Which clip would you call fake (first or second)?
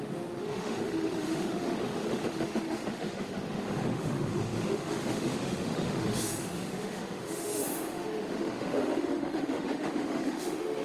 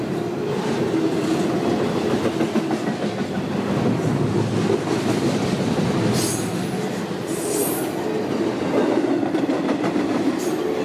first